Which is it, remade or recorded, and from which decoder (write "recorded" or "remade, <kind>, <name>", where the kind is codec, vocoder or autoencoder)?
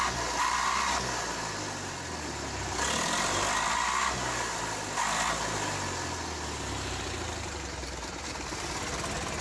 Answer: recorded